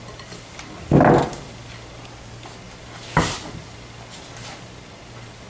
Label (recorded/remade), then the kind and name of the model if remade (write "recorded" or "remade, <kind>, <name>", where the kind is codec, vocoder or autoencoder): recorded